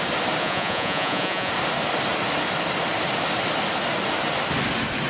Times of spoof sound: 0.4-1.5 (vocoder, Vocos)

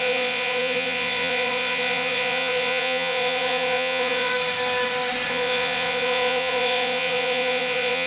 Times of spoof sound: 0.0-4.3 (vocoder, Vocos); 5.3-8.1

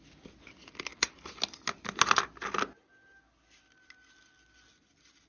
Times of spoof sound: none

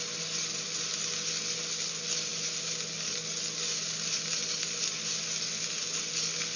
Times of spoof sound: none

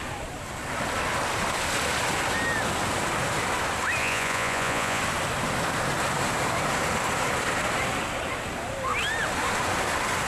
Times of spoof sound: 4.0-5.0 (vocoder, Vocos)